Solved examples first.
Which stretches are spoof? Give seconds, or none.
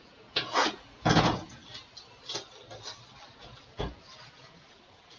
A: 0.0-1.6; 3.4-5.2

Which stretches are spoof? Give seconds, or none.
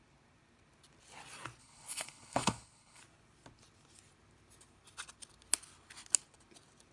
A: 1.6-3.0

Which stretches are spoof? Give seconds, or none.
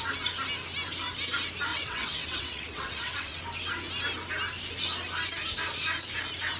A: 1.7-3.4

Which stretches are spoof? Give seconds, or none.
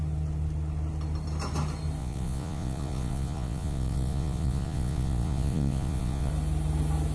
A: 2.0-6.3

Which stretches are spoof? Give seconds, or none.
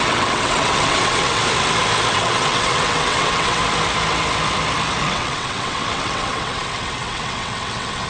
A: 0.0-1.4; 2.1-3.6; 5.0-8.1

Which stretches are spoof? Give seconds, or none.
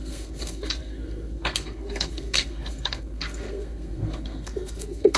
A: 0.0-5.2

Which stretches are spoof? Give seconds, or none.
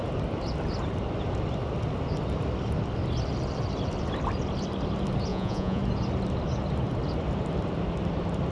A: 5.3-5.8